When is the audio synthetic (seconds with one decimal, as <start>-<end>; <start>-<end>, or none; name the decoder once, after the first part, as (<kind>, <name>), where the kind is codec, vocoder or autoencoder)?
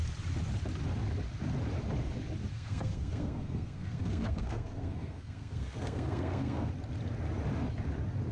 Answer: 2.5-6.7 (codec, SNAC)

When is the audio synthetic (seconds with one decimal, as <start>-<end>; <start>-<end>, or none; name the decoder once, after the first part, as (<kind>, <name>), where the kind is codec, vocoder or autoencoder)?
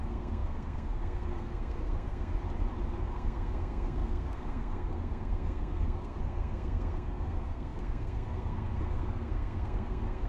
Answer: 0.0-2.3 (codec, SNAC); 3.0-10.3